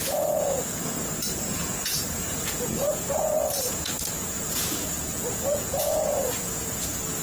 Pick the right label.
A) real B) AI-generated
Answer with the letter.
B